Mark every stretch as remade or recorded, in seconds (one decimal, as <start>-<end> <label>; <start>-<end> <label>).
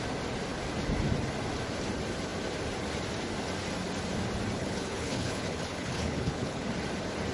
0.0-4.6 recorded; 4.6-6.7 remade; 6.7-7.3 recorded